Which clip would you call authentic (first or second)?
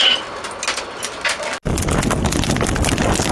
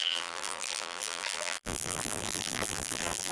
first